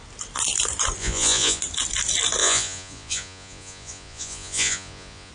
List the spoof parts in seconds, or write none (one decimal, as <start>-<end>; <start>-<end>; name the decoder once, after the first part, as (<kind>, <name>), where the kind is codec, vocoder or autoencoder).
1.0-1.6 (vocoder, Vocos); 2.4-5.3